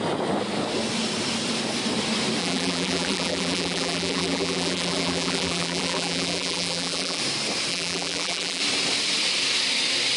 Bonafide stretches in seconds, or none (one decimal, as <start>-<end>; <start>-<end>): 0.0-2.4; 7.2-7.7; 8.6-10.2